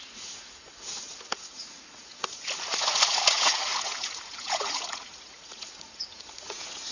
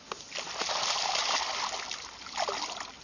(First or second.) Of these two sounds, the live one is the second